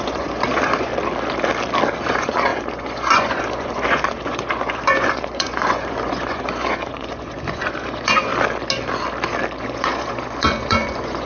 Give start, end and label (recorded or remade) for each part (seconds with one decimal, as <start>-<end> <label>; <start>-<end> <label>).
0.0-0.9 remade; 0.9-2.0 recorded; 2.0-8.3 remade; 8.3-9.6 recorded; 9.6-11.3 remade